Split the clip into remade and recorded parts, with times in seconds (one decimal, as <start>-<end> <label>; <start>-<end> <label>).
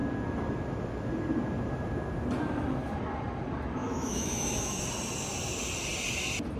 0.0-3.8 recorded; 3.8-4.8 remade; 4.8-6.6 recorded